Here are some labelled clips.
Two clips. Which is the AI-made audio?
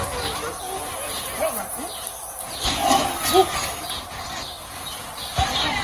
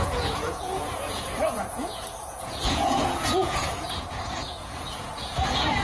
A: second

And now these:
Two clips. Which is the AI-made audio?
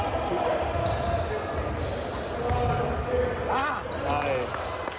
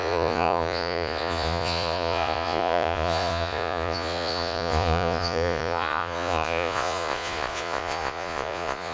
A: second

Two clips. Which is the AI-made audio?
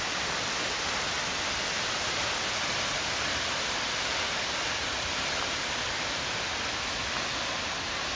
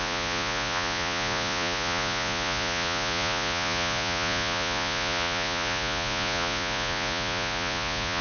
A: second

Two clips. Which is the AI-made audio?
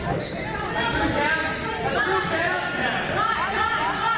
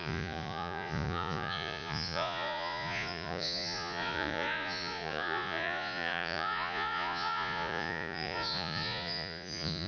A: second